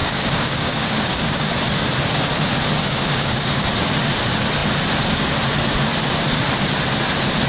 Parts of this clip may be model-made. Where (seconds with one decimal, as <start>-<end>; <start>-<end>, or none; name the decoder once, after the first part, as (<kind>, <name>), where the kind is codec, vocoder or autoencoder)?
0.0-1.5 (codec, DAC); 2.8-3.7